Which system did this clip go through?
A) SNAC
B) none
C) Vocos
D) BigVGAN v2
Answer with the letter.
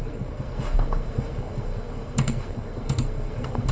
A